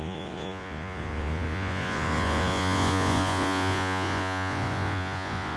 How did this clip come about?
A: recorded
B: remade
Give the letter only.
B